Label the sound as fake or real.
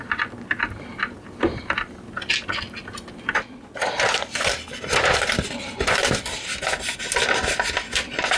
real